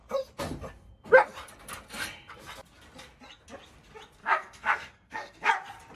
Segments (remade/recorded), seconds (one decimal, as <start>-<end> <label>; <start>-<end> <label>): 0.0-4.2 recorded; 4.2-5.5 remade; 5.5-6.0 recorded

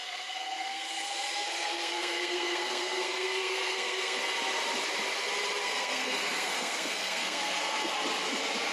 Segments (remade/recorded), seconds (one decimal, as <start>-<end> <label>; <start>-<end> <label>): 0.0-4.2 remade; 4.2-5.6 recorded; 5.6-7.9 remade; 7.9-8.7 recorded

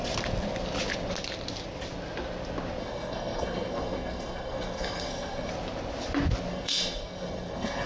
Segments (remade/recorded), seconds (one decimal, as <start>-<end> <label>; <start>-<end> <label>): 0.0-2.8 recorded; 2.8-5.5 remade; 5.5-6.5 recorded; 6.5-7.9 remade